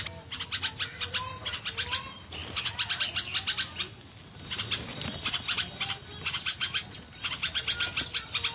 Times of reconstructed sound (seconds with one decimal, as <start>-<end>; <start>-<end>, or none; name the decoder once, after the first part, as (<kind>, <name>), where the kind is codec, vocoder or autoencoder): none